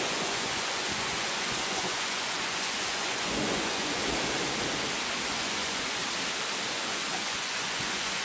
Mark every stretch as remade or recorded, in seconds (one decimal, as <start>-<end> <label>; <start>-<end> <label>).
0.0-4.0 remade; 4.0-5.3 recorded; 5.3-6.0 remade; 6.0-6.7 recorded; 6.7-8.2 remade